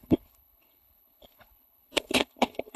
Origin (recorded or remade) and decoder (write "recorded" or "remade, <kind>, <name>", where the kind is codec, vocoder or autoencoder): remade, codec, HILCodec